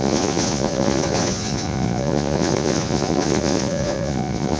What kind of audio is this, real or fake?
fake